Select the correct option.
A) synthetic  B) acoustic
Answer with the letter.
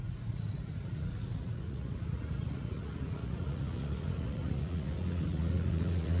A